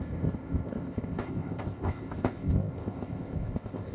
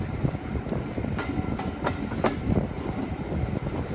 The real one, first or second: second